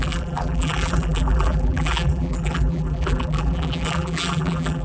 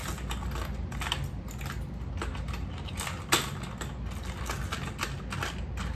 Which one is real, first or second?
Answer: second